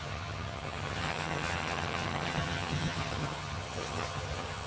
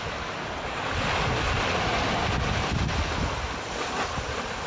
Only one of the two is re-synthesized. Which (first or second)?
first